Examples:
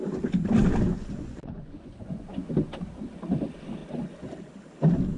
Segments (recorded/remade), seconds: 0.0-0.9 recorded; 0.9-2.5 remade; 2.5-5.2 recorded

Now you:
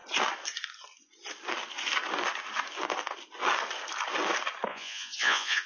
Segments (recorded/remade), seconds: 0.0-4.7 recorded; 4.7-5.7 remade

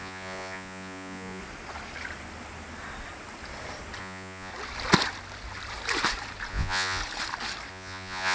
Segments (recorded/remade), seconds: 0.0-1.4 remade; 1.4-4.0 recorded; 4.0-4.5 remade; 4.5-6.5 recorded; 6.5-7.0 remade; 7.0-7.7 recorded; 7.7-8.3 remade